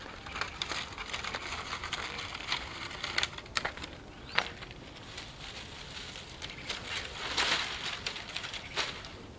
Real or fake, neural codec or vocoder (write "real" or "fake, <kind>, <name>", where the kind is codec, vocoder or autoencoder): real